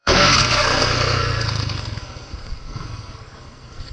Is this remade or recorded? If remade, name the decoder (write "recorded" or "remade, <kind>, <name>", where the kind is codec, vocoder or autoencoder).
remade, codec, SNAC